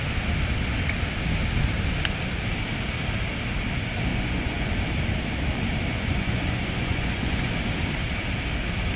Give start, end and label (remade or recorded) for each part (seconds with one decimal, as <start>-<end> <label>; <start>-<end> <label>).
0.0-4.1 recorded; 4.1-4.7 remade; 4.7-5.9 recorded; 5.9-7.5 remade; 7.5-9.0 recorded